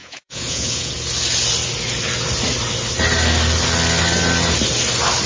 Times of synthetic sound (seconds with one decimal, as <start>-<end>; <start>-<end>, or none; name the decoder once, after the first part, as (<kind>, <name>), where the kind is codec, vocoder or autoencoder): 0.0-0.9 (vocoder, Vocos)

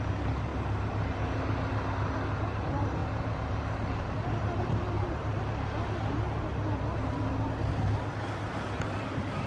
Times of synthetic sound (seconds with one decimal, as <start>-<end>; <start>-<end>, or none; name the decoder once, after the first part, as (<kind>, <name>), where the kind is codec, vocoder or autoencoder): 3.0-5.4 (vocoder, BigVGAN v2)

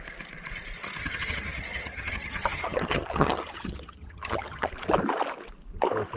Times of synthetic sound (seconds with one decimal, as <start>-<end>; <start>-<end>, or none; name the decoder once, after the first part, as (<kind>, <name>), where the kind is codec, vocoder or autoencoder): 1.0-4.7 (vocoder, HiFi-GAN)

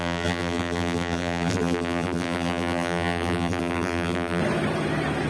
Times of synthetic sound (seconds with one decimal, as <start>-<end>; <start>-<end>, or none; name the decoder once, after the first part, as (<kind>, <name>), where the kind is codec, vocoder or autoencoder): 0.0-4.4 (vocoder, BigVGAN v2)

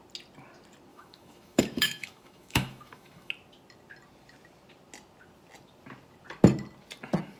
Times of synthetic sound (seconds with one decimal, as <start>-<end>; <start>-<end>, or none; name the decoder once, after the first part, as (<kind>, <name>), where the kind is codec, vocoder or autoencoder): 0.9-3.3 (autoencoder, DAC-VAE)